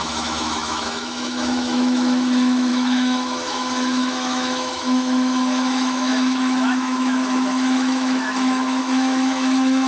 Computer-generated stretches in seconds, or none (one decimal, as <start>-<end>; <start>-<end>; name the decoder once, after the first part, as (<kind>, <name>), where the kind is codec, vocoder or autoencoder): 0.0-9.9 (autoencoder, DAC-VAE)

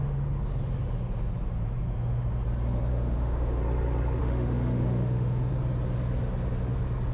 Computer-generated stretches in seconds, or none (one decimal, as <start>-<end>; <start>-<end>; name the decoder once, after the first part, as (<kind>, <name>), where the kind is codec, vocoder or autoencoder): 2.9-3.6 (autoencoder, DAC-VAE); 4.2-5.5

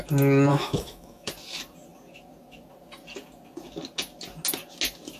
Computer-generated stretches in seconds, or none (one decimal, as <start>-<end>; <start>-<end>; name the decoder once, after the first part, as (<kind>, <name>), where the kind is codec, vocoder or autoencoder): 0.5-1.3 (autoencoder, DAC-VAE)

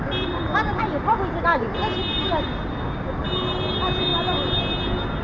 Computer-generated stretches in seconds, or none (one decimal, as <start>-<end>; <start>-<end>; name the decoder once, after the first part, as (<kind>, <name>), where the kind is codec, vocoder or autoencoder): none